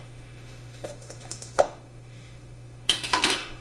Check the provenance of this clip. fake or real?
fake